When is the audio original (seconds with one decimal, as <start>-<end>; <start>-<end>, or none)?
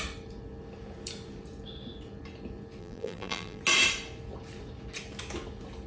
0.0-2.8; 3.6-5.9